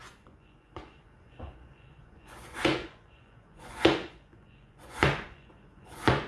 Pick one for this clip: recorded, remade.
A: remade